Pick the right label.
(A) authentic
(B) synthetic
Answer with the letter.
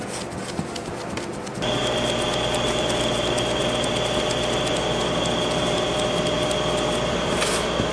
A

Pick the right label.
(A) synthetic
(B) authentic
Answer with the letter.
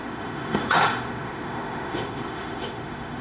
A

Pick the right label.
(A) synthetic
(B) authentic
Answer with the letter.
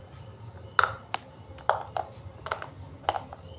B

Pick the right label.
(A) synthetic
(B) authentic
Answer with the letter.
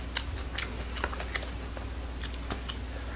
B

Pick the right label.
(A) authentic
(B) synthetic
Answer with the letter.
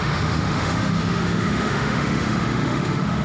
B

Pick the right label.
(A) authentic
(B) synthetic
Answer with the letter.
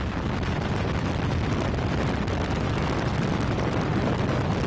A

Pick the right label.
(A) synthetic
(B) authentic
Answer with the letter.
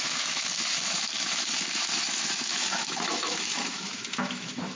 A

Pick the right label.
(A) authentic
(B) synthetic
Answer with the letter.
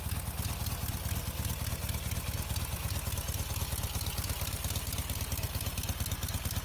A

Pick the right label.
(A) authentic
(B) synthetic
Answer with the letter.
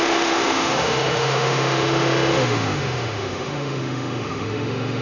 B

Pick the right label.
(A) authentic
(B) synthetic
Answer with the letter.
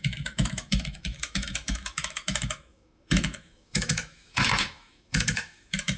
B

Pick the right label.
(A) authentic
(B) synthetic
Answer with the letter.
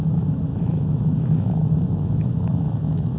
B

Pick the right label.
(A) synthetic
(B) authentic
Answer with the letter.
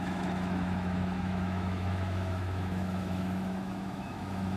A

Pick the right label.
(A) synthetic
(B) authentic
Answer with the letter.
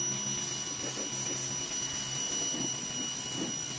B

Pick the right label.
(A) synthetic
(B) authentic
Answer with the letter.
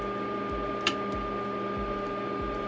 B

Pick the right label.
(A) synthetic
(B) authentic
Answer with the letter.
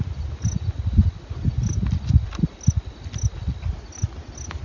B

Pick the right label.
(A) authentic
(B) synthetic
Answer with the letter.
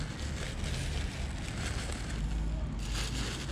A